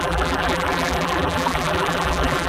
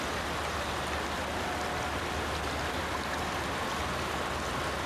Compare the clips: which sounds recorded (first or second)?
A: second